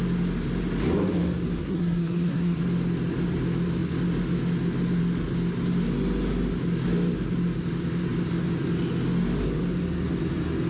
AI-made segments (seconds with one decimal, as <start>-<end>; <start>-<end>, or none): 1.6-2.6